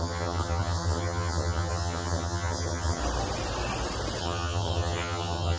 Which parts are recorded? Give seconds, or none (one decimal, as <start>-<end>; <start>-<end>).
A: 3.0-4.2